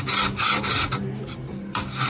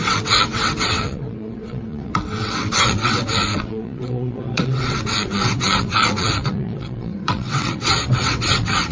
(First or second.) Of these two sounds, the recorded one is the first